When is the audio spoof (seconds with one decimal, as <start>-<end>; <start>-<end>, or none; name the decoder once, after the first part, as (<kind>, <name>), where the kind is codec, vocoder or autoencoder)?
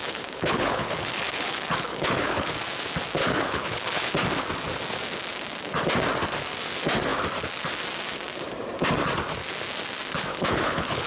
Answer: 0.0-2.5 (codec, HILCodec); 3.2-4.1; 10.3-11.1